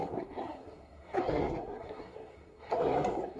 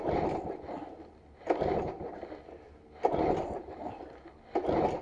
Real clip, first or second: second